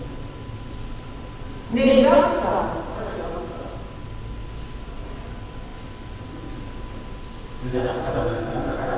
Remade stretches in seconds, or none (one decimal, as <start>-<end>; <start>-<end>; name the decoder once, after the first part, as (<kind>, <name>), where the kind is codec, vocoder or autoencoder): none